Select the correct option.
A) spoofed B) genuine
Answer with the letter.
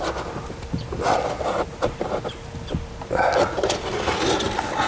B